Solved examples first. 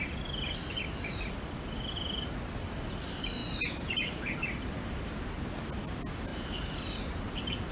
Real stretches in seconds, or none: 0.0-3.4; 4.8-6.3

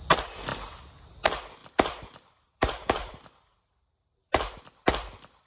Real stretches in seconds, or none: 0.0-1.6; 4.6-5.5